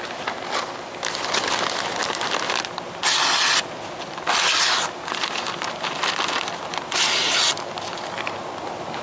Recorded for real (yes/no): yes